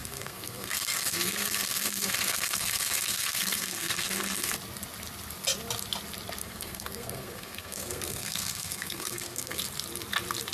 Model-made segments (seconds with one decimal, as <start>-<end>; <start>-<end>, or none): 0.0-4.5; 6.4-9.6